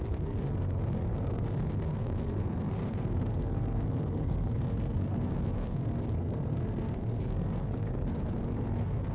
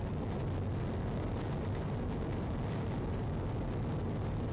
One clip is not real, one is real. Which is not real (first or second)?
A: first